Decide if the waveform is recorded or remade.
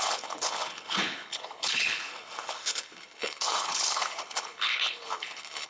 remade